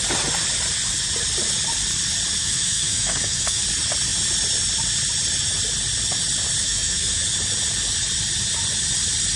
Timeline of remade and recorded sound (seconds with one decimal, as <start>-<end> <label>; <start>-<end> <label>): 0.0-2.4 recorded; 2.4-3.6 remade; 3.6-6.6 recorded; 6.6-7.2 remade; 7.2-9.4 recorded